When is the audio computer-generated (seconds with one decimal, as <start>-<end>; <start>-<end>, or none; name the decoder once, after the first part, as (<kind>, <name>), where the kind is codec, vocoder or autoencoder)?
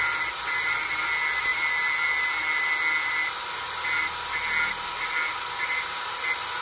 none